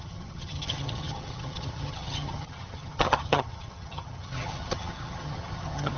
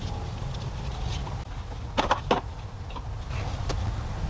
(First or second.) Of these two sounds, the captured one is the second